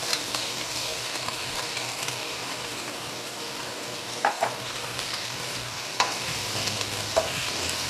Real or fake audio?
fake